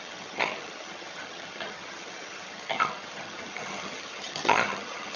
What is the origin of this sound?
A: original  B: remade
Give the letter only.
B